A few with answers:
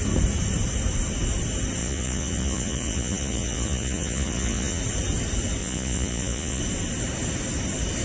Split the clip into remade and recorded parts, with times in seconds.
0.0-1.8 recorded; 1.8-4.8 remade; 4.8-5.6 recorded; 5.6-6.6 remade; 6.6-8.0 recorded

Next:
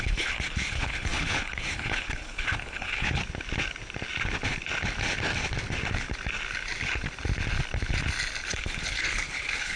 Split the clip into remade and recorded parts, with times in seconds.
0.0-3.2 remade; 3.2-8.5 recorded; 8.5-9.8 remade

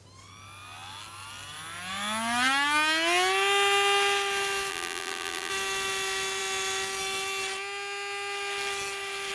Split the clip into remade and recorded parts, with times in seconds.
0.0-4.7 recorded; 4.7-5.5 remade; 5.5-9.3 recorded

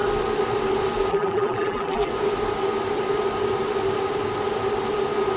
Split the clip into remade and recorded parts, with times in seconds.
0.0-1.1 recorded; 1.1-2.1 remade; 2.1-5.4 recorded